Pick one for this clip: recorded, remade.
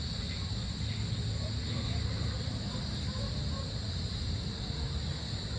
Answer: recorded